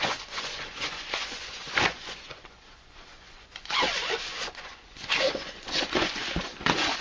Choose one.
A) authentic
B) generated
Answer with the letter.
B